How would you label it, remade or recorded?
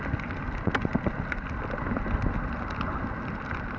recorded